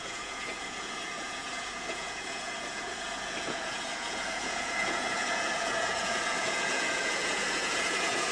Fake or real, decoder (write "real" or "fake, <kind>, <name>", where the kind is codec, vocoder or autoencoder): fake, vocoder, Vocos